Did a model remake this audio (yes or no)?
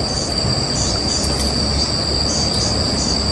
no